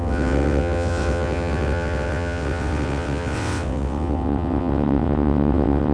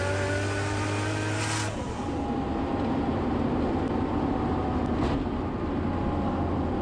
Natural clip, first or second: second